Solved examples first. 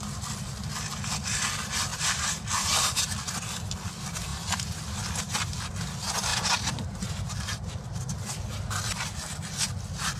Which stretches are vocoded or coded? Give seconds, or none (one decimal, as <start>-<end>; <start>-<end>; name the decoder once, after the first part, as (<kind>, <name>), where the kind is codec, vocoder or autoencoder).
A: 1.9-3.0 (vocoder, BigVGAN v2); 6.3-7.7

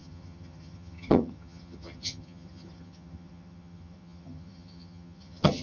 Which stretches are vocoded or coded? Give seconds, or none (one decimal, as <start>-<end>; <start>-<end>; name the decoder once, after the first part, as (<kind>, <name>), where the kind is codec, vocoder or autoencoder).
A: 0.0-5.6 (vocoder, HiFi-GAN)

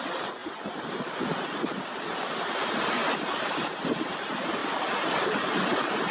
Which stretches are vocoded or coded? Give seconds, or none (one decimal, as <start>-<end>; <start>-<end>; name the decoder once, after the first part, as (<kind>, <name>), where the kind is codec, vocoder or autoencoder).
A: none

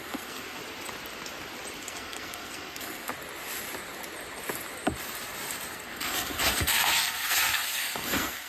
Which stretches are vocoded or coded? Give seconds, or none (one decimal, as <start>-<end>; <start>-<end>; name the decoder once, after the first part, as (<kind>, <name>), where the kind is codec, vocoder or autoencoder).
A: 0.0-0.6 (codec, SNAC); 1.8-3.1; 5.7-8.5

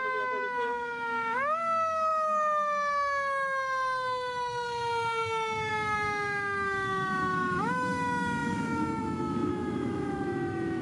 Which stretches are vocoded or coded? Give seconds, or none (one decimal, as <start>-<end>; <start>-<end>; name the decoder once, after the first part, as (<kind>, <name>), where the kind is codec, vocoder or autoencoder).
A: 0.0-10.8 (autoencoder, DAC-VAE)